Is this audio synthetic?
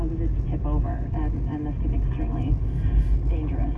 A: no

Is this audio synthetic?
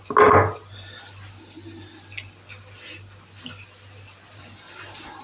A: no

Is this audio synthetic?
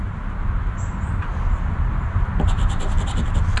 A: no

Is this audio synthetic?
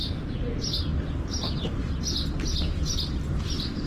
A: no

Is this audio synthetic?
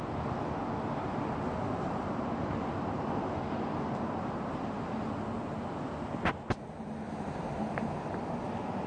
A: no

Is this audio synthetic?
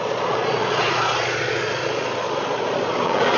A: yes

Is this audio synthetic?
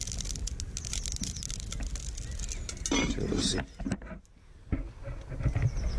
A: no